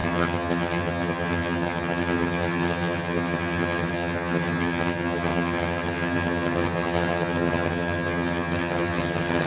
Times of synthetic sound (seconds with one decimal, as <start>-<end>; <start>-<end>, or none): 0.0-9.5